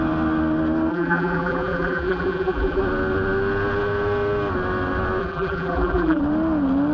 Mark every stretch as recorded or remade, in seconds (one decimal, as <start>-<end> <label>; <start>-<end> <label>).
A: 0.0-0.9 recorded; 0.9-2.8 remade; 2.8-5.2 recorded; 5.2-6.2 remade; 6.2-6.9 recorded